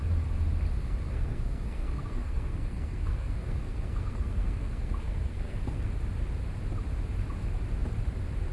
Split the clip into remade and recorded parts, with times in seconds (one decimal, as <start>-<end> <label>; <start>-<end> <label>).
0.0-0.8 recorded; 0.8-5.9 remade; 5.9-8.5 recorded